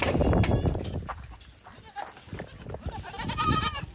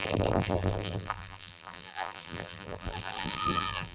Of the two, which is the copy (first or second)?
second